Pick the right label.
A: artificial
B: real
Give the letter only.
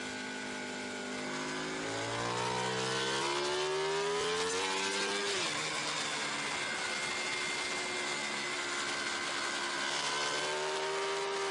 B